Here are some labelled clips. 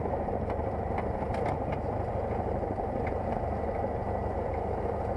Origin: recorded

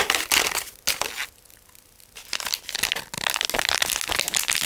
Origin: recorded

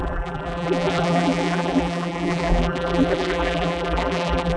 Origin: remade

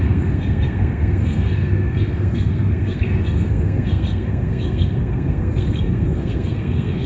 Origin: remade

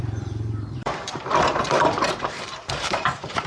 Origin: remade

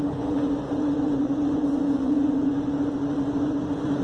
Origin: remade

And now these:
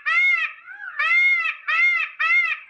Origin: recorded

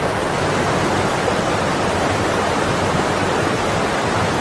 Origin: recorded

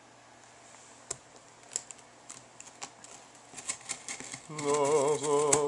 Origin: recorded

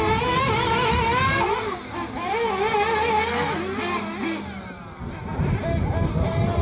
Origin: recorded